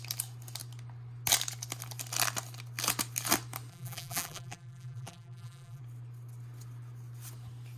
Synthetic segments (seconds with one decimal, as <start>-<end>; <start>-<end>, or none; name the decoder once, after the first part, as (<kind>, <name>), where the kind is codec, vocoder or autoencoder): 3.7-5.8 (vocoder, BigVGAN v2)